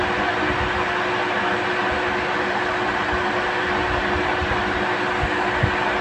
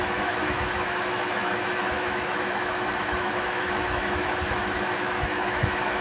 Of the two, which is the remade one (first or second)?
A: second